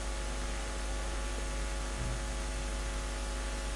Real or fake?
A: real